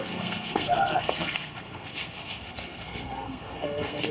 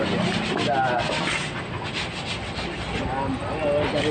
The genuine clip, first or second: second